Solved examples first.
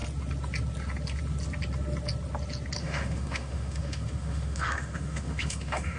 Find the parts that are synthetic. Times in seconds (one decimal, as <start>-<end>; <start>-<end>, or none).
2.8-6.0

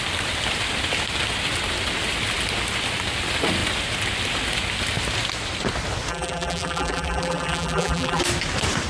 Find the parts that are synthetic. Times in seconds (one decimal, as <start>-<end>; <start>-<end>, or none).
6.1-8.2

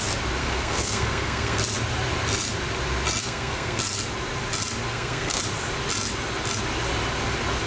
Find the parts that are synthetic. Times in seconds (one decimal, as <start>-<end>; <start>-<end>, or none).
0.4-1.6; 3.2-3.8; 4.9-5.4

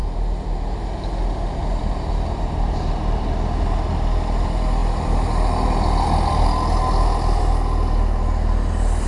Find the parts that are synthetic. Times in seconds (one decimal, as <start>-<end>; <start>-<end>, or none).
none